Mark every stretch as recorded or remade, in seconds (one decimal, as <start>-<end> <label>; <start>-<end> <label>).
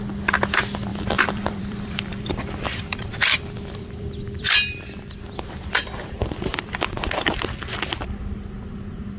0.0-0.9 recorded; 0.9-4.8 remade; 4.8-6.5 recorded; 6.5-7.3 remade; 7.3-9.2 recorded